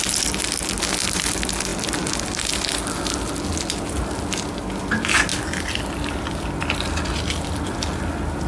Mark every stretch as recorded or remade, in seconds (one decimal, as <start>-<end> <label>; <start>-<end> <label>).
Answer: 0.0-5.3 recorded; 5.3-6.5 remade; 6.5-8.5 recorded